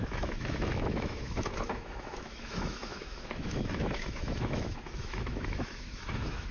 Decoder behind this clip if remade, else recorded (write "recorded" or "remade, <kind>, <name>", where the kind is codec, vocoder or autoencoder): remade, autoencoder, DAC-VAE